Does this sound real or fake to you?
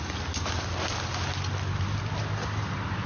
real